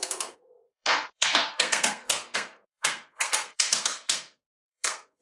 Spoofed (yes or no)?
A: yes